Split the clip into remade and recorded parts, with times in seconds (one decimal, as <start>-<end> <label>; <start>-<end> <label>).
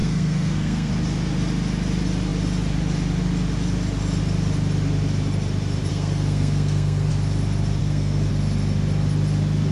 0.0-0.9 remade; 0.9-5.9 recorded; 5.9-7.1 remade; 7.1-7.8 recorded; 7.8-8.3 remade; 8.3-9.7 recorded